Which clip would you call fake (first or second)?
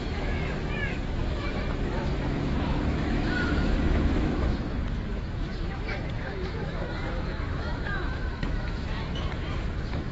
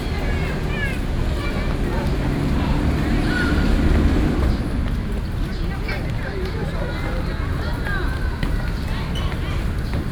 first